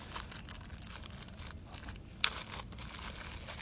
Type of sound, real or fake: real